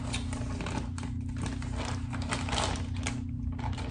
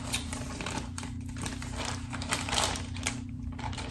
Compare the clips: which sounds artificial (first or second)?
second